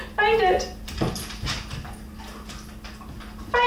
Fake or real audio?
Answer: real